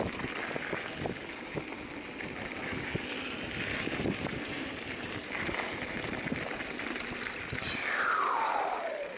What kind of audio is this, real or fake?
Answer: real